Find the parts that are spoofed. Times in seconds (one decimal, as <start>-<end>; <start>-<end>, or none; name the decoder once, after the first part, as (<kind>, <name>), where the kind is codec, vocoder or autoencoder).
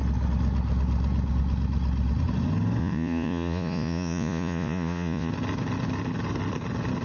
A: 2.8-5.3 (vocoder, Vocos)